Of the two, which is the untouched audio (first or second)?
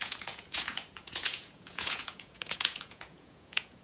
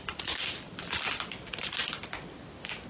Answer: second